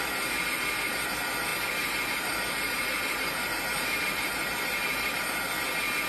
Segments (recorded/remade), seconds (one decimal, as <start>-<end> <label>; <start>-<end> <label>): 0.0-1.5 recorded; 1.5-5.2 remade; 5.2-6.1 recorded